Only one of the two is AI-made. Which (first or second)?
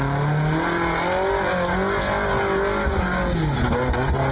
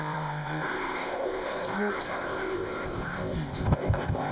second